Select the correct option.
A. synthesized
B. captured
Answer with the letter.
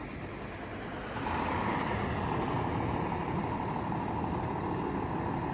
B